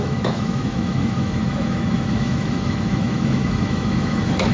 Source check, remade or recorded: remade